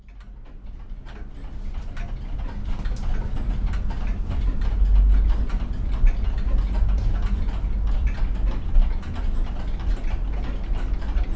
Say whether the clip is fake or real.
real